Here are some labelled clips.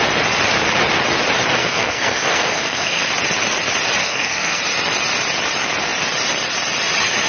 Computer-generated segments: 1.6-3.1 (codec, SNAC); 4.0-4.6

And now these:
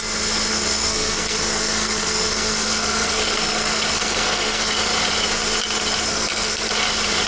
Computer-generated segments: 0.5-4.6 (codec, SNAC); 6.1-6.7

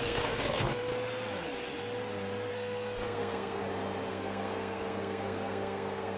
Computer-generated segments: 0.0-0.9 (codec, SNAC); 2.5-3.6; 4.1-6.2

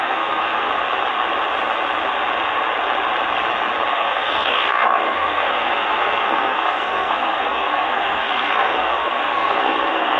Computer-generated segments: 0.0-0.7 (codec, SNAC); 3.9-10.2